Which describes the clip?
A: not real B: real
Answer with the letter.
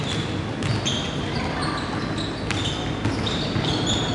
B